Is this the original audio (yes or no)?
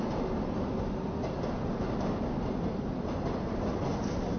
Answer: yes